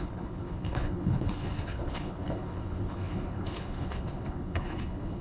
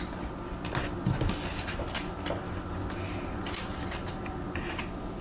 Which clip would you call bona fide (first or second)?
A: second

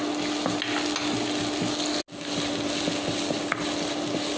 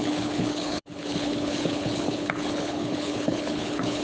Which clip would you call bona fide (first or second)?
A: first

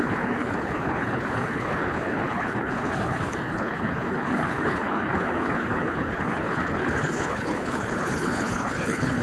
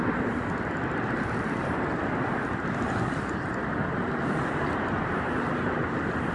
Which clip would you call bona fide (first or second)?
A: second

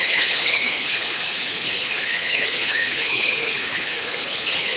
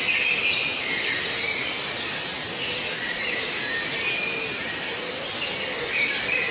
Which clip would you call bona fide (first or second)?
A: second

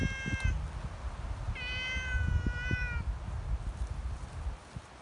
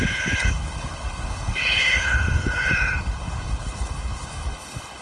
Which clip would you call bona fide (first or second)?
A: first